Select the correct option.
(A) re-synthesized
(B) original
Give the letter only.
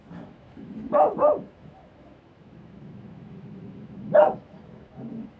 A